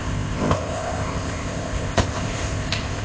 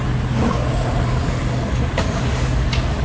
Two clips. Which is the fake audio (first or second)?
first